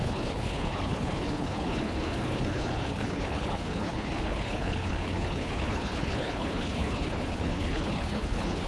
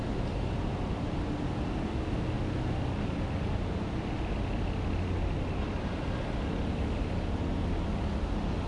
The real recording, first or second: second